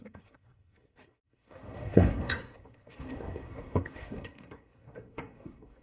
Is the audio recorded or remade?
remade